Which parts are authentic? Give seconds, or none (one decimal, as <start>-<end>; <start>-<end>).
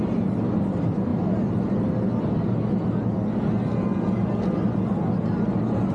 0.0-5.9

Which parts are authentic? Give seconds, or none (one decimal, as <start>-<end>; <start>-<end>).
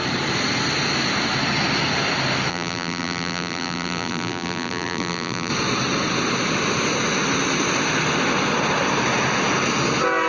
0.0-2.5; 5.5-10.3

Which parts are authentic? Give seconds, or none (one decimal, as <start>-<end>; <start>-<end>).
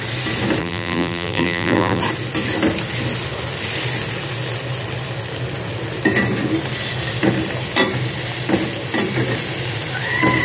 0.0-0.6; 2.0-10.4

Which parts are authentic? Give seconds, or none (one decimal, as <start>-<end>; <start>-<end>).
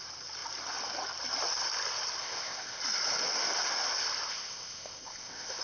0.0-2.2; 2.8-4.3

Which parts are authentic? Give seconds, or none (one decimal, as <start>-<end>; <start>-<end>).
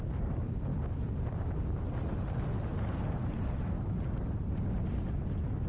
0.0-5.7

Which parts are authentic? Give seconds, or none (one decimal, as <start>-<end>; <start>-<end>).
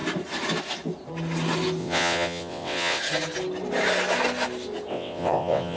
0.0-1.8; 3.0-4.9